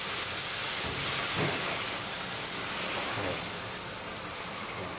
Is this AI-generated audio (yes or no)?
no